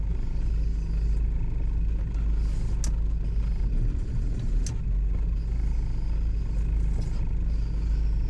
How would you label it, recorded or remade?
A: recorded